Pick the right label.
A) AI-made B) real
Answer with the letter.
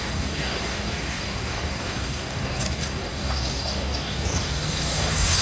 A